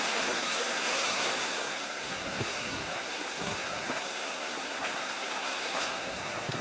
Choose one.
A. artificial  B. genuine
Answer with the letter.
A